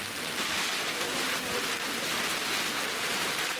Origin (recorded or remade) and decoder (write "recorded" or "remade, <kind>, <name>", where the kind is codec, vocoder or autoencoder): recorded